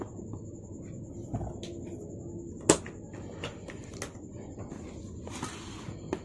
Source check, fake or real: real